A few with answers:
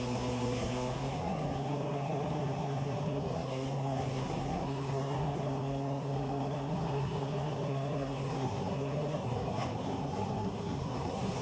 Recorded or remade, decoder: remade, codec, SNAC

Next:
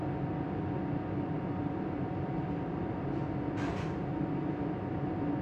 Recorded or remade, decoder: recorded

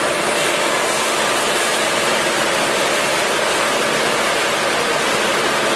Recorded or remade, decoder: recorded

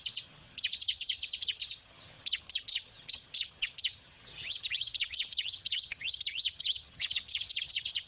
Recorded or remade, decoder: remade, vocoder, HiFi-GAN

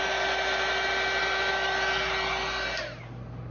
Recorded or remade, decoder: recorded